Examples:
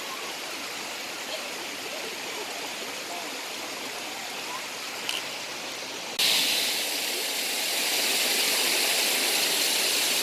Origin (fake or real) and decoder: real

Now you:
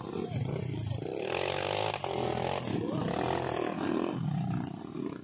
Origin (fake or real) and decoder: real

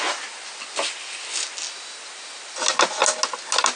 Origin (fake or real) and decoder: real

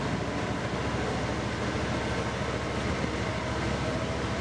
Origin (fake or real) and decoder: real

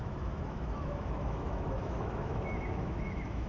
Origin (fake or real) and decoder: fake, autoencoder, DAC-VAE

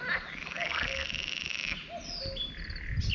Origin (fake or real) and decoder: real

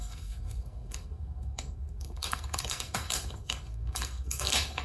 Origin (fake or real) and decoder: fake, codec, SNAC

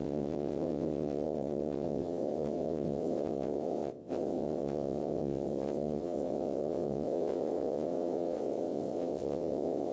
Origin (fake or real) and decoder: fake, vocoder, WaveNeXt